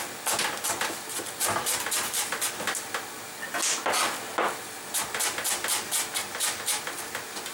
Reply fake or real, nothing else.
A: real